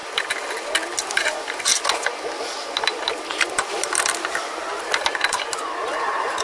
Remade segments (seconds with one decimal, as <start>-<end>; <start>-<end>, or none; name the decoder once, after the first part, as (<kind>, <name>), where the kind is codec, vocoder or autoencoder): none